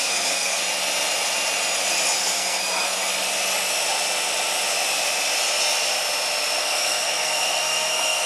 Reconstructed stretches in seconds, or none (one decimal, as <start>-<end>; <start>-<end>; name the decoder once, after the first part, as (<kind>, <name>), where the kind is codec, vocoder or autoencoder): 0.0-0.6 (codec, SNAC); 2.2-3.0; 6.6-8.3